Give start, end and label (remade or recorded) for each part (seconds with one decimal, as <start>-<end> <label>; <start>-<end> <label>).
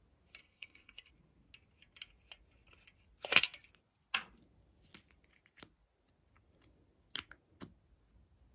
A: 0.0-0.4 recorded; 0.4-1.1 remade; 1.1-8.5 recorded